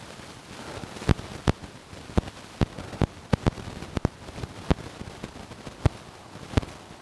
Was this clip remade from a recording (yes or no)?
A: no